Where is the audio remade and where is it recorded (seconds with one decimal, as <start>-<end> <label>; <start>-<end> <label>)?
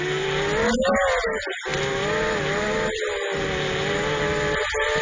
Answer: 0.0-5.0 recorded